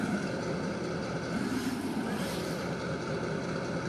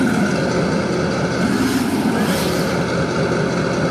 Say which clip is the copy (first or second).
first